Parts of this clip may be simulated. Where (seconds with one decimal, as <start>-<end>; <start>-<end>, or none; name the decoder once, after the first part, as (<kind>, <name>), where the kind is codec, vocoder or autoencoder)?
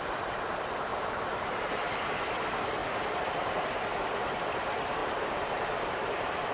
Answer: 0.9-2.2 (vocoder, BigVGAN v2); 2.8-3.6; 5.0-6.5